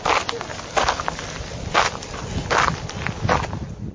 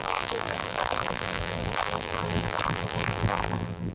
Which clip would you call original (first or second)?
first